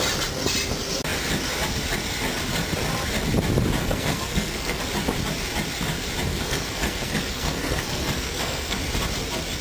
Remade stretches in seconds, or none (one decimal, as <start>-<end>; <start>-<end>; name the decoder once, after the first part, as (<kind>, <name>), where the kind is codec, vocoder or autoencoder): 3.8-4.8 (codec, SNAC); 6.3-8.8